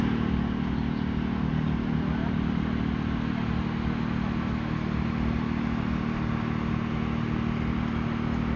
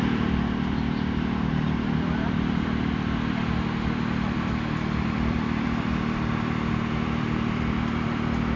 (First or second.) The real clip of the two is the first